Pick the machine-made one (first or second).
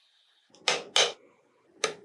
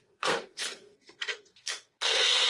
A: second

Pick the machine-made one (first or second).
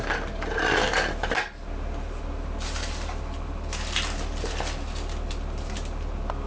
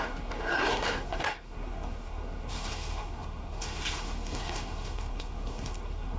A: second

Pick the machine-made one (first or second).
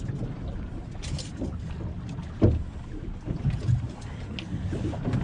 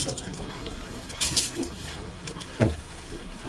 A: second